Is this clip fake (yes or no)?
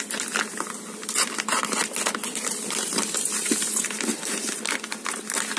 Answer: yes